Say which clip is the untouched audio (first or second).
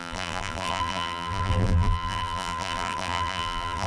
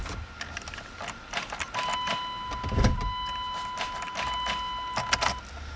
second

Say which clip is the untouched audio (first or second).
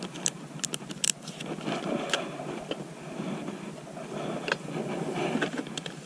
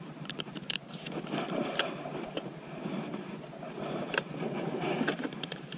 first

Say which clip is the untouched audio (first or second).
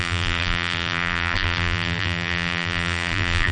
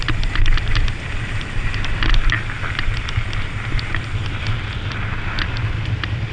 second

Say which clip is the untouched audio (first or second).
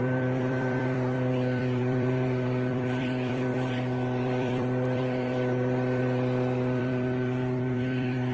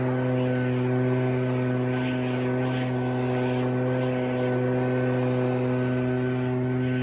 second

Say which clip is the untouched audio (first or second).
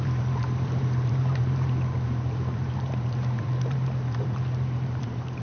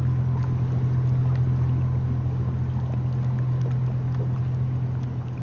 second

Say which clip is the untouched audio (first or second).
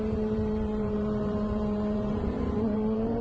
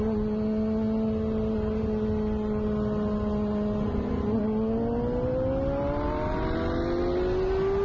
second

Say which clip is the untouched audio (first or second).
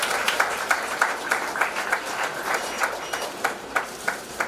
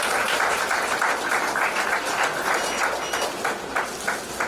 second